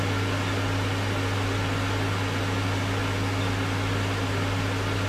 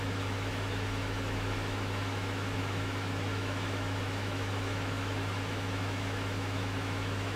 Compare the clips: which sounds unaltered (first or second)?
first